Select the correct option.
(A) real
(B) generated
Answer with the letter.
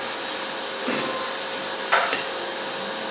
A